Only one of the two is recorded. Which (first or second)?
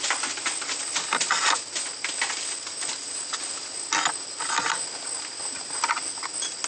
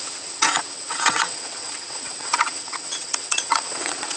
first